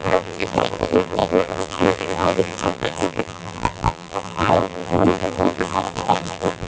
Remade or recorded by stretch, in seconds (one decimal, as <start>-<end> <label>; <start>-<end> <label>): 0.0-6.7 remade